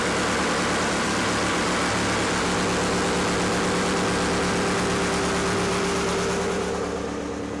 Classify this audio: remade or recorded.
recorded